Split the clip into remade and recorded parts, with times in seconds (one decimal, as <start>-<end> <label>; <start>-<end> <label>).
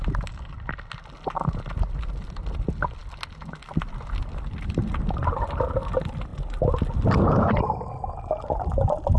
0.0-9.2 recorded